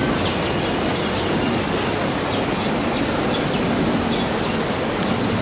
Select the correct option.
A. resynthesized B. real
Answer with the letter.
B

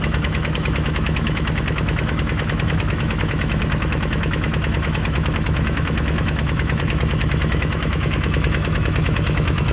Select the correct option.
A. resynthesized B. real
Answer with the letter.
A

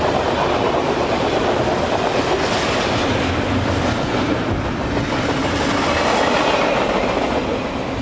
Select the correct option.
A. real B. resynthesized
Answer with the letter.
A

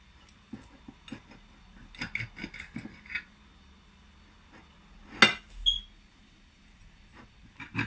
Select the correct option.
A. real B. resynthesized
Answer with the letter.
A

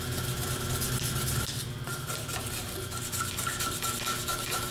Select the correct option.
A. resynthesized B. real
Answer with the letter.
B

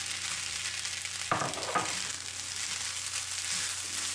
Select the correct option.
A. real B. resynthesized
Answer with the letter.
A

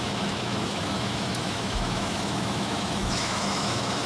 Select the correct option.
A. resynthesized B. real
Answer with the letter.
A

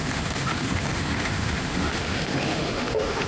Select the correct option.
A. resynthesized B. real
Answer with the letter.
A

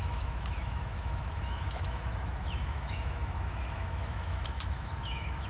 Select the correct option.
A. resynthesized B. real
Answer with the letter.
A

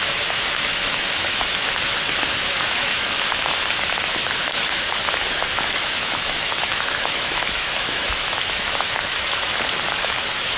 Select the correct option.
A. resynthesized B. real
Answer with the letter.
A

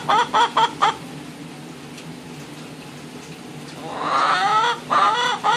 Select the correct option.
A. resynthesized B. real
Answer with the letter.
B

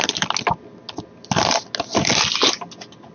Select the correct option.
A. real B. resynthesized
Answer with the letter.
A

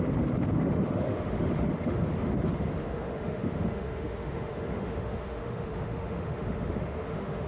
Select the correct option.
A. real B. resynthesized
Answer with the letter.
B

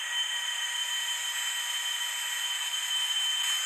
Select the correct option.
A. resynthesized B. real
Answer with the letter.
B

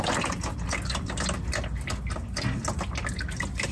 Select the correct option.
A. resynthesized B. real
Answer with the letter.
B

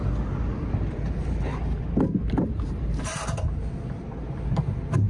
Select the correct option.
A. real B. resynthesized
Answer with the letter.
A